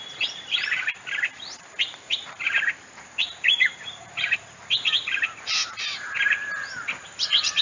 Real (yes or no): no